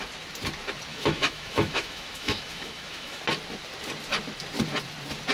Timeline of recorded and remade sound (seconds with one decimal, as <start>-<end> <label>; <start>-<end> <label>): 0.0-0.9 recorded; 0.9-3.2 remade; 3.2-5.3 recorded